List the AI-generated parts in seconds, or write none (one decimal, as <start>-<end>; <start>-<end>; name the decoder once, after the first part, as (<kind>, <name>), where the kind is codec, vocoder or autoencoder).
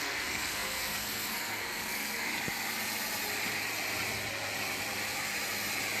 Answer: 0.0-2.3 (codec, SNAC)